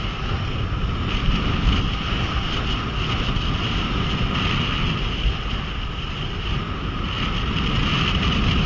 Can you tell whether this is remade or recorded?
recorded